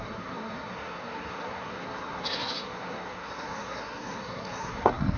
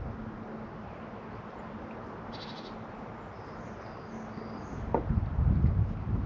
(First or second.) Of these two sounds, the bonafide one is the second